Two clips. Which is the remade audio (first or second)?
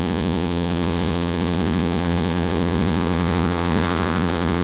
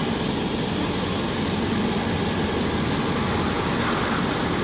first